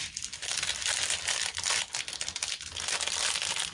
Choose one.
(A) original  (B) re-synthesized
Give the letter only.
A